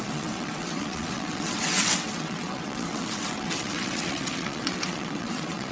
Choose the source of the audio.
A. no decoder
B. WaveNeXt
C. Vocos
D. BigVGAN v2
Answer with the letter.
B